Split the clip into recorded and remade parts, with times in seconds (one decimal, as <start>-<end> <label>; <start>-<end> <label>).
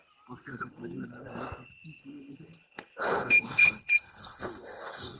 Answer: 0.0-0.5 recorded; 0.5-1.3 remade; 1.3-2.0 recorded; 2.0-5.2 remade